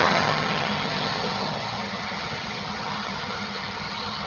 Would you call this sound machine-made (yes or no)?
yes